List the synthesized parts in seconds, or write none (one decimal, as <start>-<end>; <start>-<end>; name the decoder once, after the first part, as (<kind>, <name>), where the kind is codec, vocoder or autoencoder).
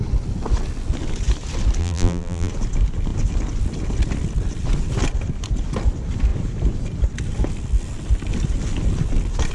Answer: 1.8-2.5 (vocoder, BigVGAN v2)